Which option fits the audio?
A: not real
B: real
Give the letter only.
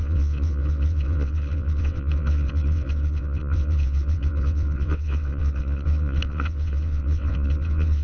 A